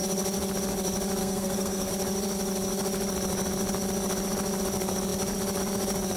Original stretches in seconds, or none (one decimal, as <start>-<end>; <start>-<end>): 0.0-1.2; 1.9-6.2